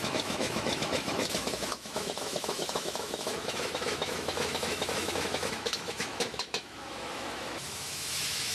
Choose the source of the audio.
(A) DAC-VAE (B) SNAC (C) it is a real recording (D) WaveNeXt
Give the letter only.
A